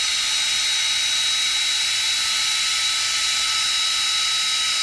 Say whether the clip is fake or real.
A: real